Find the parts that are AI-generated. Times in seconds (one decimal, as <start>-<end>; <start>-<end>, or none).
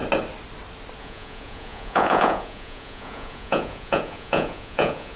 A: 1.0-5.2